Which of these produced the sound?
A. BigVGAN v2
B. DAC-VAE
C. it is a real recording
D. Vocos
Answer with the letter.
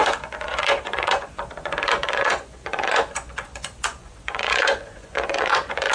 D